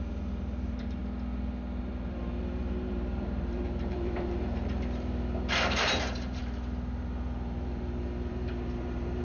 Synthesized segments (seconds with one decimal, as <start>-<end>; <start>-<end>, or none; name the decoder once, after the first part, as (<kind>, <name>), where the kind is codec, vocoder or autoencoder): 0.0-1.0 (vocoder, BigVGAN v2); 1.8-9.2